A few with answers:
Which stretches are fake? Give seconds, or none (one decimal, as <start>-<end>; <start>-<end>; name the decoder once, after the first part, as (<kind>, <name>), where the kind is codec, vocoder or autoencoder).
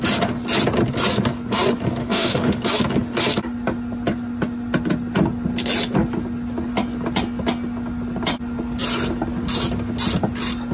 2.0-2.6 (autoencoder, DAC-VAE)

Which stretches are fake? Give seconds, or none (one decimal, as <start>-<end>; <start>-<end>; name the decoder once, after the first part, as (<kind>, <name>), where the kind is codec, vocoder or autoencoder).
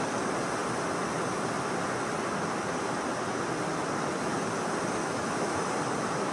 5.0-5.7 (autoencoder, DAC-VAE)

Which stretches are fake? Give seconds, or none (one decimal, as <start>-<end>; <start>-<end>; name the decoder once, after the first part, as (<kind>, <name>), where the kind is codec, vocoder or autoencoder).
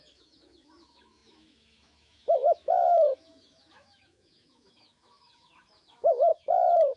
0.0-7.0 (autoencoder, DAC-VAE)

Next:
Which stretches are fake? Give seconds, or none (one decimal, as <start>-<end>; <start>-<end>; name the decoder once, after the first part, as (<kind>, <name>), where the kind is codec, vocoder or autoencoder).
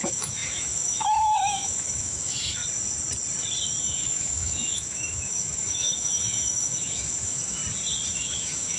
0.0-2.6 (autoencoder, DAC-VAE); 3.8-7.6; 8.1-8.8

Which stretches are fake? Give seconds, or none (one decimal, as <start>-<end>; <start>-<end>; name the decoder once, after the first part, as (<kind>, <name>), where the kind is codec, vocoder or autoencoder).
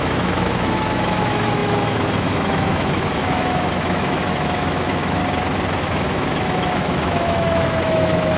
0.0-5.2 (autoencoder, DAC-VAE); 5.8-8.4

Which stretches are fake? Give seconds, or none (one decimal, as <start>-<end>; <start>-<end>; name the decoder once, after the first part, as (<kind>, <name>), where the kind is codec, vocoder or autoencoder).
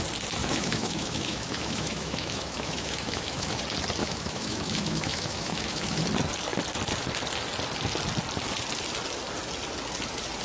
0.4-3.6 (autoencoder, DAC-VAE); 4.0-6.0